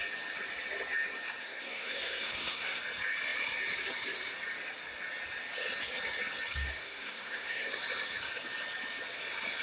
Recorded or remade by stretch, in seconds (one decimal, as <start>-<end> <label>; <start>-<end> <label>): 0.0-1.4 recorded; 1.4-2.8 remade; 2.8-6.7 recorded; 6.7-7.7 remade; 7.7-9.6 recorded